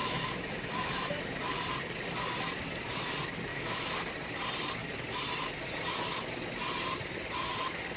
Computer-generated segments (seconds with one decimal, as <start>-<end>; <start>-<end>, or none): 0.0-1.2; 3.5-4.1